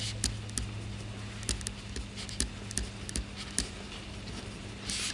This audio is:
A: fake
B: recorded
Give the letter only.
B